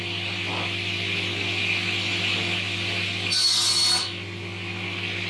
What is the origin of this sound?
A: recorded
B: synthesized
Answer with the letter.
A